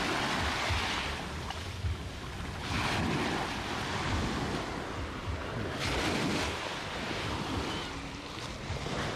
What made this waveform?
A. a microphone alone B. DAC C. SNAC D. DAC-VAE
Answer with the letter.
A